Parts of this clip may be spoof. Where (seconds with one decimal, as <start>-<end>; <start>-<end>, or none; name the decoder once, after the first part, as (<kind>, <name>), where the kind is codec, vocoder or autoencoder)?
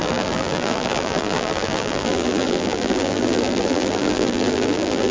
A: 0.0-5.1 (vocoder, BigVGAN v2)